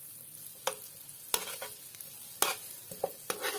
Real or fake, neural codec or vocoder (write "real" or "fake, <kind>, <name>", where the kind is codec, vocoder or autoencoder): real